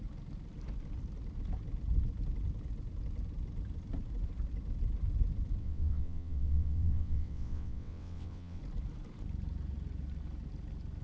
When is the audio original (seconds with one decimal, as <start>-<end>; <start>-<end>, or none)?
0.0-5.6; 8.6-11.0